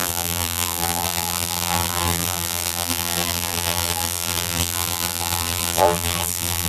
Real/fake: fake